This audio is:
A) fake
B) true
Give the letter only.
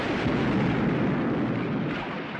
B